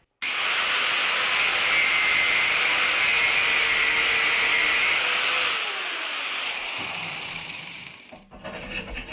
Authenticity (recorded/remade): recorded